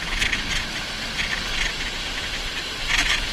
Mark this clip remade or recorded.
recorded